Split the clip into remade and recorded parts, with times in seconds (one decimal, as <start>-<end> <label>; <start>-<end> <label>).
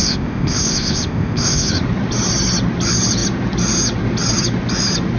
0.0-1.7 remade; 1.7-5.2 recorded